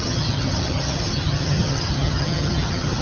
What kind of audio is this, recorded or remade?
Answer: remade